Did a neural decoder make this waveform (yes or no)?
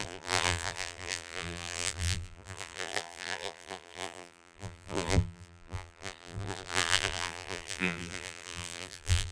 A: yes